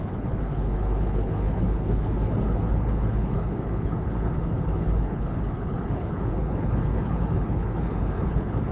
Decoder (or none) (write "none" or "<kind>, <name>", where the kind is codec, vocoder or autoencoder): codec, HILCodec